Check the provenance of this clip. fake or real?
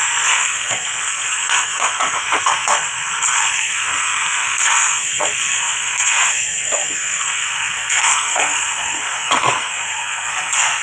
fake